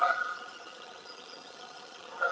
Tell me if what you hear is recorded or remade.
remade